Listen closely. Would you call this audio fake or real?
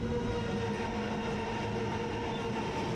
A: real